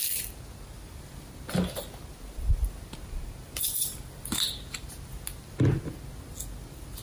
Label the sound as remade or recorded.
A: recorded